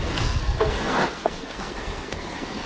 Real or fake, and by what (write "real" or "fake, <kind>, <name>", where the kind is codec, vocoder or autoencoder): fake, codec, SNAC